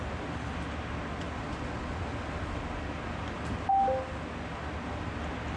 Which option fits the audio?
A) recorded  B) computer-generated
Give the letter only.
A